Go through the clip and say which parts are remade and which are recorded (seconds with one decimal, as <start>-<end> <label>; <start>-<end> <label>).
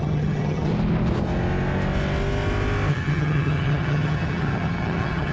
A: 0.0-0.7 remade; 0.7-2.9 recorded; 2.9-5.3 remade